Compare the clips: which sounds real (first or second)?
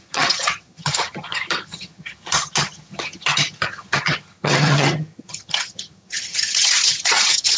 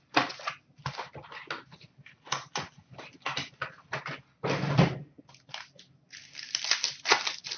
second